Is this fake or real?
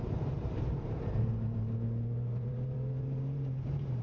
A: fake